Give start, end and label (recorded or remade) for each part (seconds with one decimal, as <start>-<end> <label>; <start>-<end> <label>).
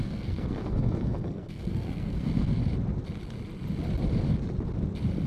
0.0-2.6 remade; 2.6-5.3 recorded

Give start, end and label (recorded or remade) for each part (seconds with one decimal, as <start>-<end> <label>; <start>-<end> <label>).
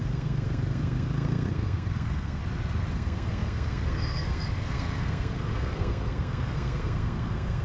0.0-2.4 remade; 2.4-2.9 recorded; 2.9-7.6 remade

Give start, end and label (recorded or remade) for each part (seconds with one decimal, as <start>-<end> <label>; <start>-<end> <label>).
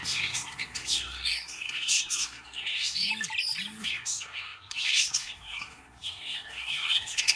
0.0-3.1 remade; 3.1-3.8 recorded; 3.8-7.4 remade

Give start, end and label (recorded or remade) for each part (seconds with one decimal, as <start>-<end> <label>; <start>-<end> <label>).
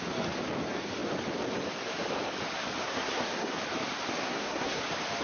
0.0-2.8 recorded; 2.8-3.6 remade; 3.6-4.2 recorded; 4.2-4.8 remade; 4.8-5.2 recorded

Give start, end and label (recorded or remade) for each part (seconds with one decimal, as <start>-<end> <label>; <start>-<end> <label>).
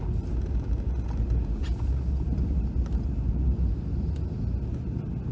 0.0-5.3 recorded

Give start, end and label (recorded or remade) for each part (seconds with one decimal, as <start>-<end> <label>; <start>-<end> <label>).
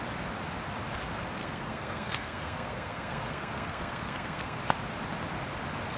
0.0-1.4 recorded; 1.4-4.6 remade; 4.6-6.0 recorded